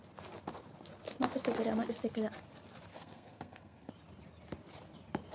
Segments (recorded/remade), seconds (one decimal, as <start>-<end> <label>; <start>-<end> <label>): 0.0-2.9 recorded; 2.9-3.9 remade; 3.9-5.3 recorded